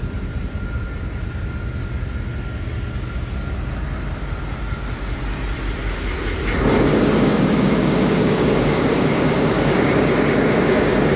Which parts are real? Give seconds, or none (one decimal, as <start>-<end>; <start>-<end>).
0.0-6.9